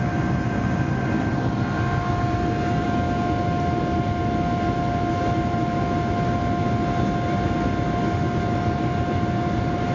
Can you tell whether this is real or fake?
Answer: real